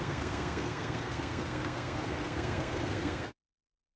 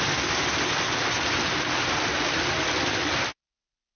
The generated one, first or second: first